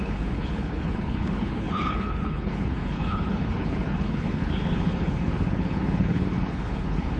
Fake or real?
fake